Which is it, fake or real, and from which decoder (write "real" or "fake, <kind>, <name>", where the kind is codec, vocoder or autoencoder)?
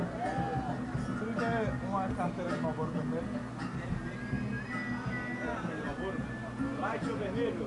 real